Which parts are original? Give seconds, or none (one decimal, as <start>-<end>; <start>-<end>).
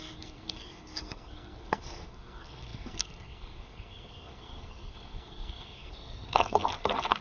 none